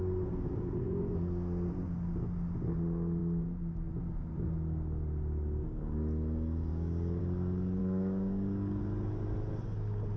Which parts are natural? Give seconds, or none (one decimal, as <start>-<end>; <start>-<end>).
0.0-6.7; 7.2-7.8; 8.8-10.2